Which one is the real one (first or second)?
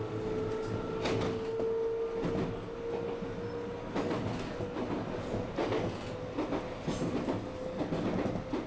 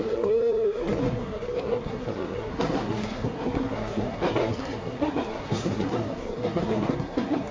first